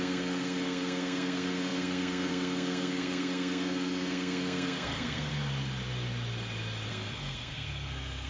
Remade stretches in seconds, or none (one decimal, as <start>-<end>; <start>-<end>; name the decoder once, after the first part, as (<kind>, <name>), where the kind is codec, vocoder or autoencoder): 0.0-5.3 (codec, SNAC); 6.9-8.3